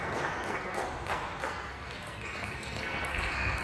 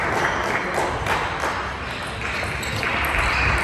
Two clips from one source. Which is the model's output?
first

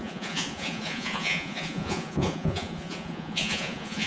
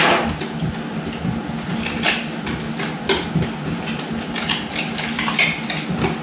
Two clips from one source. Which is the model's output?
first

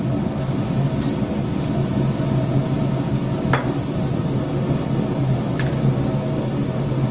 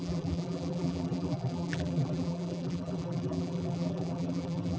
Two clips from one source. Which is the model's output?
second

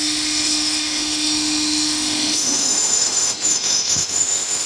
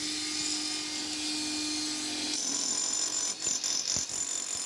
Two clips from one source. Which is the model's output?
first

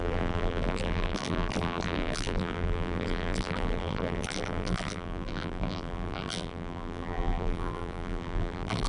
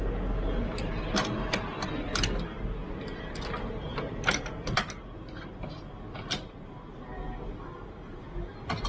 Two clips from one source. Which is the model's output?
first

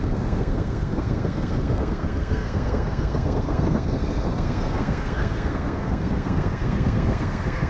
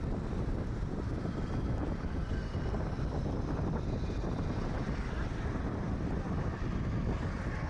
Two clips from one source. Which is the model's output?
first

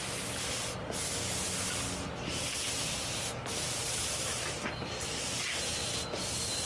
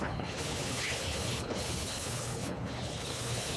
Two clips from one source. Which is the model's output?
second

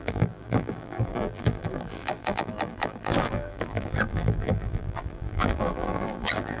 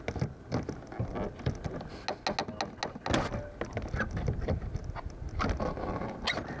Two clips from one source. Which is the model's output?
first